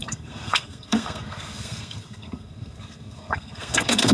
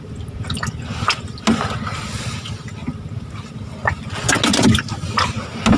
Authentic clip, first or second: second